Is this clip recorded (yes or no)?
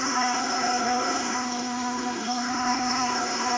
no